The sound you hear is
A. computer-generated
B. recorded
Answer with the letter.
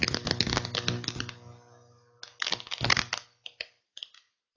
B